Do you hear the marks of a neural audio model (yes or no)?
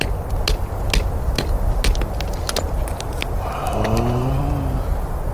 no